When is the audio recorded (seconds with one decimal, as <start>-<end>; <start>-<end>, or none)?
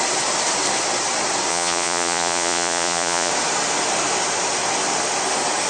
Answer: 0.0-1.5; 3.3-5.7